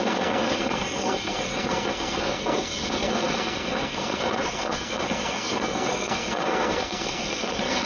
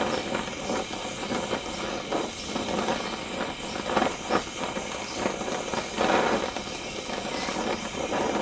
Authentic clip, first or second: second